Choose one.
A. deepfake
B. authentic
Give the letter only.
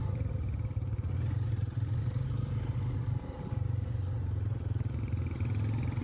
B